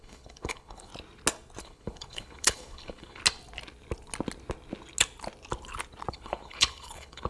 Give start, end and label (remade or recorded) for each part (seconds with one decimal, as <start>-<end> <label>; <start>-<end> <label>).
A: 0.0-0.9 remade; 0.9-1.6 recorded; 1.6-3.2 remade; 3.2-6.1 recorded; 6.1-7.3 remade